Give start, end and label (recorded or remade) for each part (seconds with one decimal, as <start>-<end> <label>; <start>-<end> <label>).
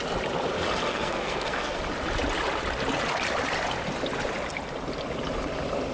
0.0-0.9 recorded; 0.9-1.8 remade; 1.8-5.9 recorded